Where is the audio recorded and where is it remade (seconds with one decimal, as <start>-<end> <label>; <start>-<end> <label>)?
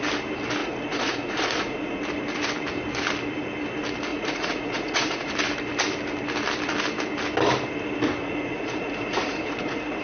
0.0-0.6 recorded; 0.6-2.0 remade; 2.0-4.1 recorded; 4.1-5.3 remade; 5.3-8.2 recorded; 8.2-10.0 remade